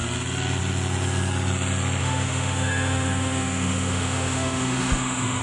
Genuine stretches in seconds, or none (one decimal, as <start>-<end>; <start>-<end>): 0.0-2.0